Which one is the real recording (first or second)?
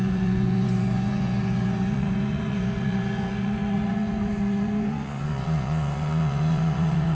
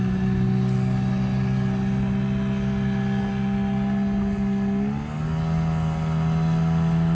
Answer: second